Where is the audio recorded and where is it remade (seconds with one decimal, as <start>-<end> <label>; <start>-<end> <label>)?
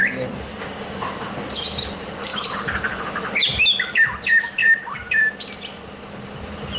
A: 0.0-2.3 recorded; 2.3-3.0 remade; 3.0-4.6 recorded; 4.6-5.3 remade; 5.3-6.8 recorded